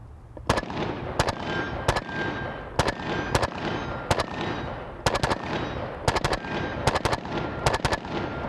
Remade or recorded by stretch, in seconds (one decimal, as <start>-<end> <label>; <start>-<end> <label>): 0.0-8.5 recorded

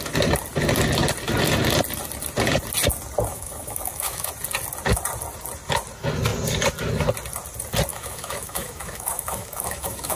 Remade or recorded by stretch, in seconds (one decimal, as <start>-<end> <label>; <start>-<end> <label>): 0.0-3.3 recorded; 3.3-4.3 remade; 4.3-7.9 recorded; 7.9-10.2 remade